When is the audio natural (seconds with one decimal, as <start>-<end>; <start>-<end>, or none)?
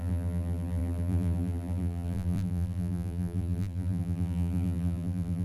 none